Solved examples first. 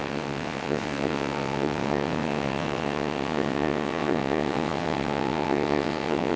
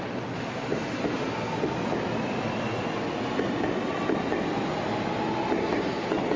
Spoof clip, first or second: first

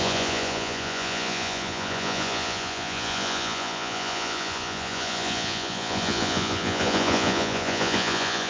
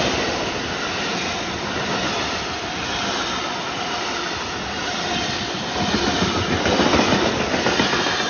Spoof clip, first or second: first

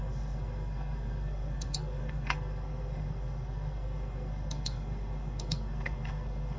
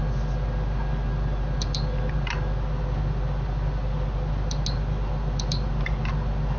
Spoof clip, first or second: first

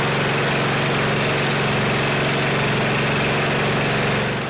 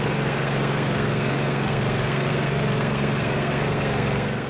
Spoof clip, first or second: second